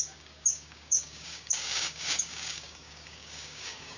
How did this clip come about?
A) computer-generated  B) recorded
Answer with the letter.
A